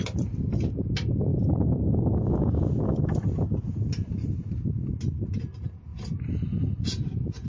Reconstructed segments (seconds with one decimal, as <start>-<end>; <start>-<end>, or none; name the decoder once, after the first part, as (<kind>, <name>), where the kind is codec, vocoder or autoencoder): none